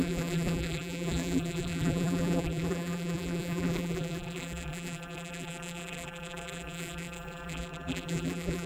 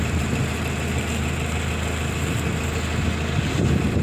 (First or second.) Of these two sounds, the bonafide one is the second